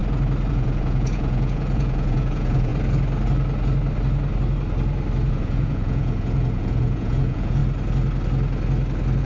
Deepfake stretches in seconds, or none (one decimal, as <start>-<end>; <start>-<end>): 0.5-2.7; 5.3-7.6